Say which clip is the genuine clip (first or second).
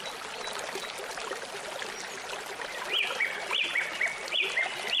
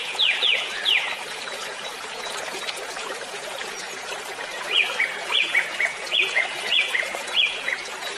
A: first